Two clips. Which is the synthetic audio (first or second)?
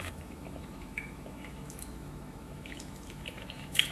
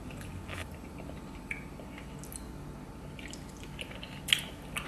first